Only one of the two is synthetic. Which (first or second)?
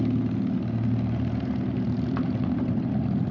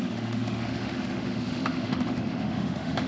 second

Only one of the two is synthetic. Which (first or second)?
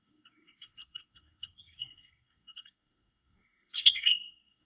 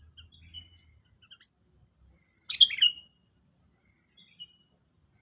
first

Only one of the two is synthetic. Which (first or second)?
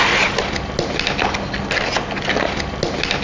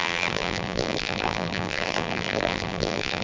second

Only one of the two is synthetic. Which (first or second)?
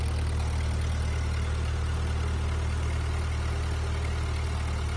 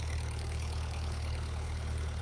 second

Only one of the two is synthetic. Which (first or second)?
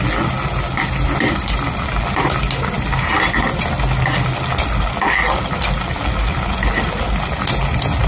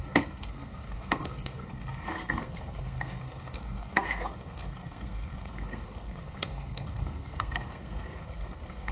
second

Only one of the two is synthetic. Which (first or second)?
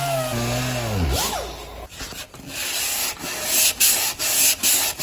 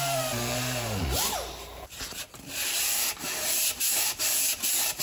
second